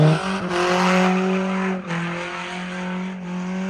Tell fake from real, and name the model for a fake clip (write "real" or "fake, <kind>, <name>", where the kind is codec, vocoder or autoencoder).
real